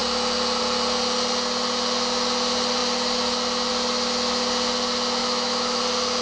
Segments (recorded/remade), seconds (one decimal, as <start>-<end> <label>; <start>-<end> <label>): 0.0-5.2 recorded; 5.2-5.8 remade; 5.8-6.2 recorded